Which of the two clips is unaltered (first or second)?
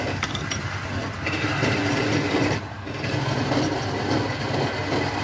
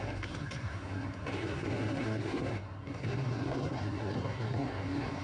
first